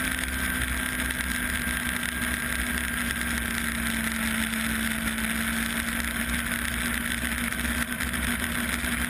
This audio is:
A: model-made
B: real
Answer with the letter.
B